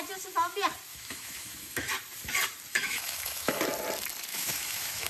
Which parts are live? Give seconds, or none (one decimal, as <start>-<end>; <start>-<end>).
0.0-0.9; 1.9-2.7; 3.6-4.3